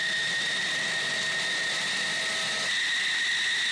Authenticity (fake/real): real